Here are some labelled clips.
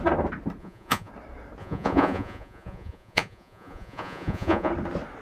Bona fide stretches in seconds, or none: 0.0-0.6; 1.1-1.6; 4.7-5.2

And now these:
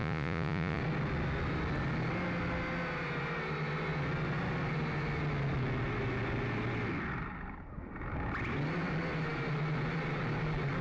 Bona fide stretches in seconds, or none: 0.8-10.8

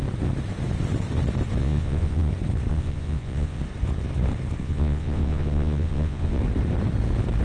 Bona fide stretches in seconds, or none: 0.0-1.6; 2.3-2.7; 3.6-4.6; 6.4-7.4